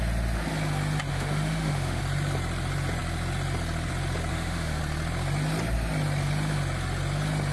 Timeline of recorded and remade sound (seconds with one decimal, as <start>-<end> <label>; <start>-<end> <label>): 0.0-1.1 recorded; 1.1-2.0 remade; 2.0-4.3 recorded; 4.3-4.8 remade; 4.8-7.5 recorded